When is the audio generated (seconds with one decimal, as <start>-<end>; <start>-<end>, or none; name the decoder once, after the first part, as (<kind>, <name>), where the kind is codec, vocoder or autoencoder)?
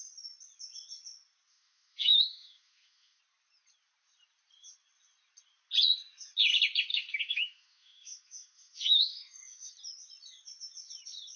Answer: 1.5-3.2 (autoencoder, DAC-VAE); 6.9-9.7